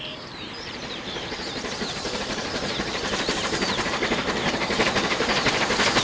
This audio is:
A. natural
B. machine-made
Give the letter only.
B